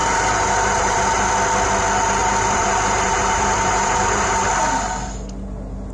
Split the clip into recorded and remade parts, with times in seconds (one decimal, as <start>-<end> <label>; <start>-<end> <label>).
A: 0.0-1.3 remade; 1.3-2.2 recorded; 2.2-4.5 remade; 4.5-5.9 recorded